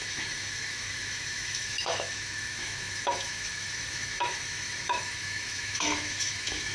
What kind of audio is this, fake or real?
fake